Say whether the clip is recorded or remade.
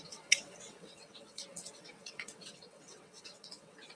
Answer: remade